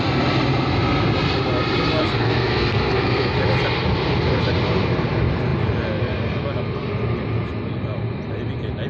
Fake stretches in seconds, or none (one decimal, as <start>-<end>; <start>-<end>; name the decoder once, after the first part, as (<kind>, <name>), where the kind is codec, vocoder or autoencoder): 2.0-3.3 (codec, SNAC)